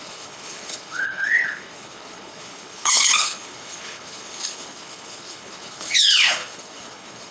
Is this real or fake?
fake